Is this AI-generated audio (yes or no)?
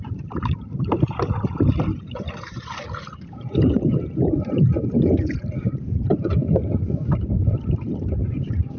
yes